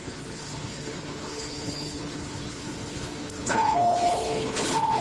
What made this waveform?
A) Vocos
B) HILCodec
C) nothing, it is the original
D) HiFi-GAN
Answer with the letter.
B